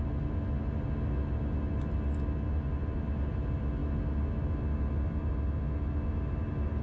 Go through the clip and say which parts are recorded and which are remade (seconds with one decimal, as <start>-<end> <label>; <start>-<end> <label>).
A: 0.0-6.8 recorded